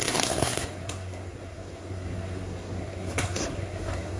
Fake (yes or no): yes